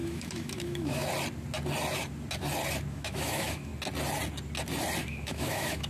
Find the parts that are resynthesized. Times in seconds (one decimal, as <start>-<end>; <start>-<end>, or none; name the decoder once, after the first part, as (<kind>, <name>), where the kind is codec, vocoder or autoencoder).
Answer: 0.0-1.0 (autoencoder, DAC-VAE); 2.9-3.7; 5.0-5.9